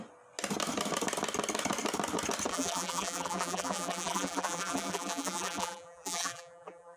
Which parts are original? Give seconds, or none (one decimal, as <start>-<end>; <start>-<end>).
0.0-2.5